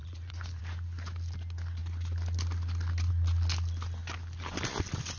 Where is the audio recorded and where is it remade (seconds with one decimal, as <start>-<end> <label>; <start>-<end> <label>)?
0.0-0.6 remade; 0.6-5.2 recorded